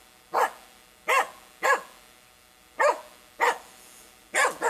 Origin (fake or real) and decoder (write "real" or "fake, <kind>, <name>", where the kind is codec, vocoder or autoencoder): real